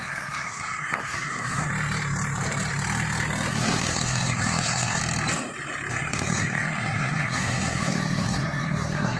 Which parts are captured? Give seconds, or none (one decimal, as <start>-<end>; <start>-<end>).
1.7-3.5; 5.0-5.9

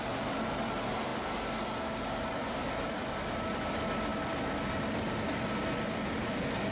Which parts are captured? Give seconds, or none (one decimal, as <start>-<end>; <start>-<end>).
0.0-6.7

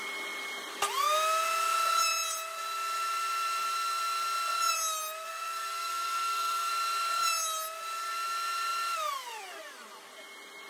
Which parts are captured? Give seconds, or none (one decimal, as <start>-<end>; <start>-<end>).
0.0-5.3; 6.7-10.7

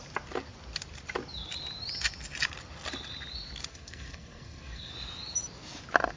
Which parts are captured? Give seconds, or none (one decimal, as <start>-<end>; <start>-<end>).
0.0-3.7; 4.9-6.2

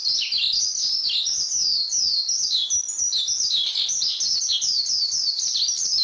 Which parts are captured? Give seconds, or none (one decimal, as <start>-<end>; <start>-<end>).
0.0-6.0

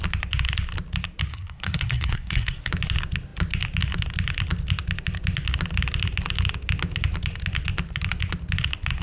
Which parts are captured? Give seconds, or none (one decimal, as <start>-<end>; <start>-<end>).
0.0-1.3; 2.7-9.0

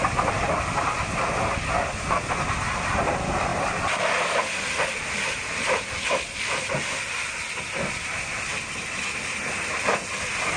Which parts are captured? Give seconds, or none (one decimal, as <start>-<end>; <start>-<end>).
0.0-10.6